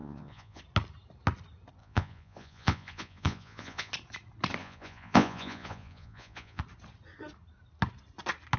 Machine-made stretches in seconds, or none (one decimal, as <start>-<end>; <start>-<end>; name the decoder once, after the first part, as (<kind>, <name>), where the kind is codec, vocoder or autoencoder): 0.0-0.6 (vocoder, Vocos); 1.8-3.9; 4.6-6.6